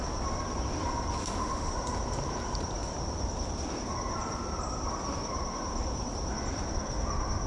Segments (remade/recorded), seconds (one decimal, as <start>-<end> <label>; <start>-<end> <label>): 0.0-1.2 recorded; 1.2-1.7 remade; 1.7-7.5 recorded